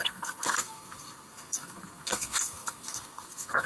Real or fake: fake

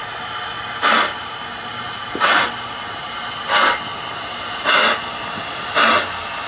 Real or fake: real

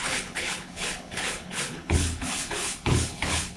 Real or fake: fake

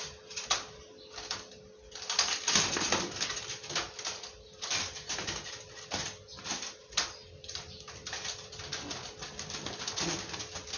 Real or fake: real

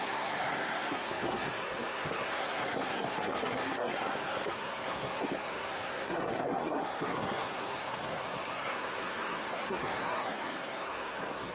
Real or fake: fake